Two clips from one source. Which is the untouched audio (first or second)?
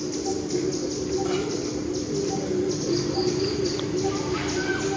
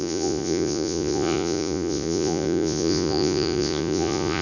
first